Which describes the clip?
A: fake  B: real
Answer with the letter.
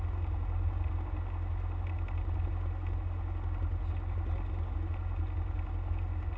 B